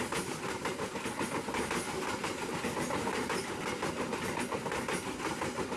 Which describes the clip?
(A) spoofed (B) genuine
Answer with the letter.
B